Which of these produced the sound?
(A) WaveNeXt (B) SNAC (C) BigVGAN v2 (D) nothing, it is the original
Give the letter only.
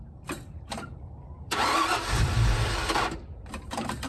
C